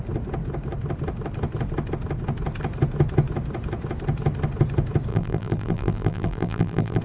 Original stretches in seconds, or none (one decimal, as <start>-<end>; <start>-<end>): 0.0-5.1